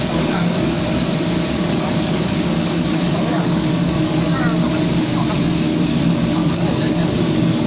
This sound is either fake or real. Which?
fake